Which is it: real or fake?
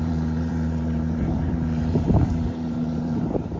fake